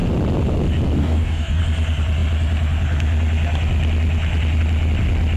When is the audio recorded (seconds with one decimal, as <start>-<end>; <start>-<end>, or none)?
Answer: 0.0-1.0; 1.6-5.4